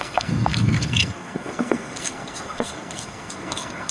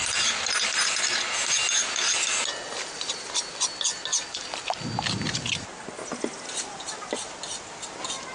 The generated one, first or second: first